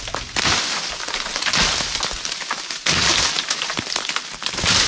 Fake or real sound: real